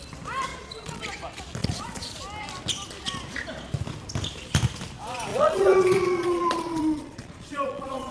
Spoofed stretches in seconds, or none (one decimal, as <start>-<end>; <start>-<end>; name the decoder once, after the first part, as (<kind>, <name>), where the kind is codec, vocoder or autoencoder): 0.5-1.0 (vocoder, Vocos); 1.6-2.2; 5.3-8.1